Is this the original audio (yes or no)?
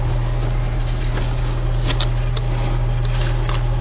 yes